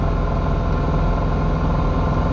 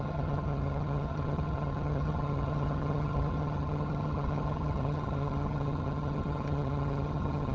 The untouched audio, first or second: first